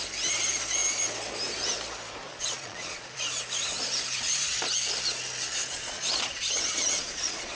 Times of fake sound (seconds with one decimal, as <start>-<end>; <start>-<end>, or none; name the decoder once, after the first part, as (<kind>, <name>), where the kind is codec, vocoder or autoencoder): 2.3-3.2 (vocoder, Vocos); 5.6-7.6